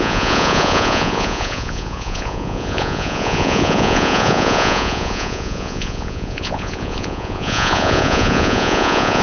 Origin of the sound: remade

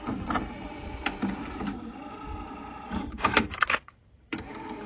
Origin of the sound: remade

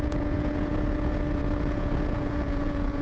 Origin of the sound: remade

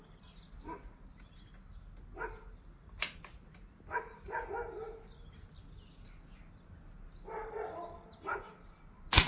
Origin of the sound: recorded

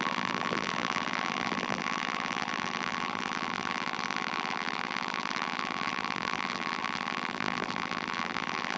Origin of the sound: remade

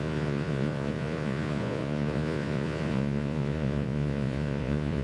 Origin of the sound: remade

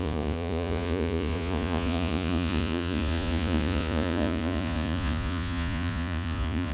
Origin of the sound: remade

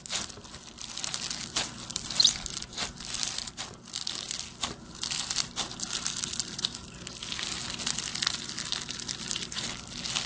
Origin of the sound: recorded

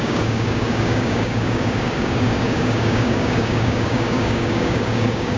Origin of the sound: remade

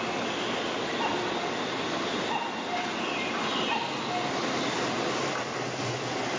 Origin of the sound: recorded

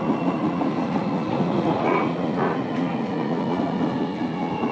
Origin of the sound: remade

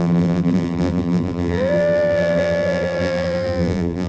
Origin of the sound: remade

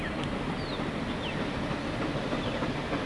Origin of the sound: recorded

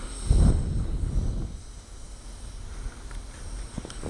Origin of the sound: recorded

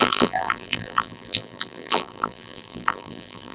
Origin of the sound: remade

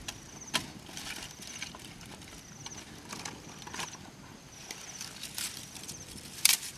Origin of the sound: recorded